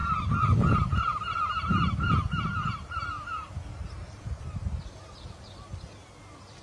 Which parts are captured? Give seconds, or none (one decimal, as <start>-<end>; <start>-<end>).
1.7-2.5; 5.4-6.6